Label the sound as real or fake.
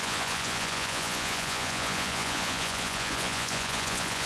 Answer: fake